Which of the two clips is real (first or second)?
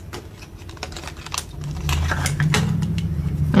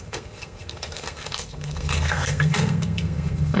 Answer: first